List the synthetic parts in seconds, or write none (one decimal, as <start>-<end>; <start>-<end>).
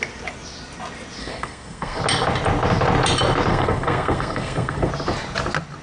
1.2-2.0; 3.5-4.9